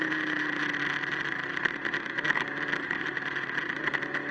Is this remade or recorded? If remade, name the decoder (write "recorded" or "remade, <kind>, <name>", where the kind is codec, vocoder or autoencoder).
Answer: recorded